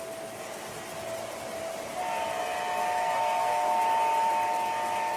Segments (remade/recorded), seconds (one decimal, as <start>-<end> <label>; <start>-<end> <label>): 0.0-2.8 recorded; 2.8-3.8 remade; 3.8-5.2 recorded